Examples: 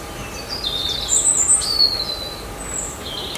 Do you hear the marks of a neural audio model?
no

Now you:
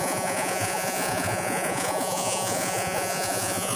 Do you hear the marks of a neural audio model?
yes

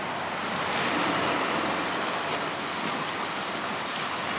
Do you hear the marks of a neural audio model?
no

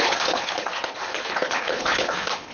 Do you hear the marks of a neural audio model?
yes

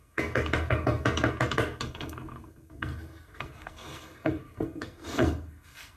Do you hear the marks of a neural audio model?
yes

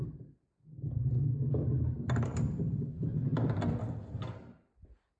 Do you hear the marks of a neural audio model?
no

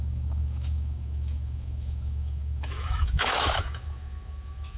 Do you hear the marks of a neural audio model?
yes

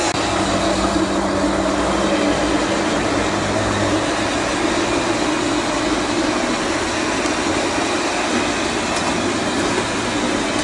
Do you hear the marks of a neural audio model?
no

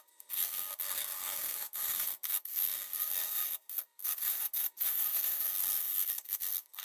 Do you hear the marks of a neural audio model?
yes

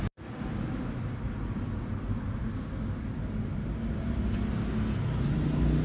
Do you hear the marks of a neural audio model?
no